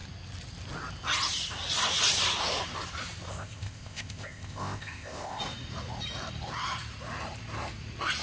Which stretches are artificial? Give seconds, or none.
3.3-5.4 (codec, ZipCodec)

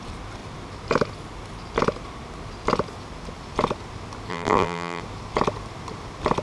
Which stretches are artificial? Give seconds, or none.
4.3-5.0 (vocoder, BigVGAN v2)

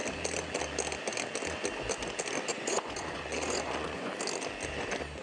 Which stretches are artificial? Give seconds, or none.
2.5-4.1 (vocoder, Vocos)

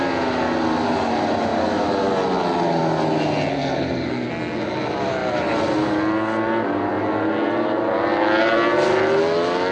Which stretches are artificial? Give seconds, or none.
3.5-4.3 (codec, SNAC)

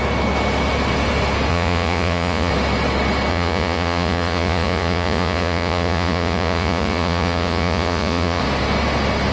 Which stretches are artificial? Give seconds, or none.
1.5-2.5 (vocoder, Vocos); 3.3-8.4

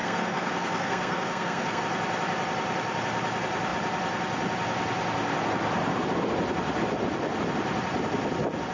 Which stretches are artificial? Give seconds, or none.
0.0-1.8 (codec, SNAC)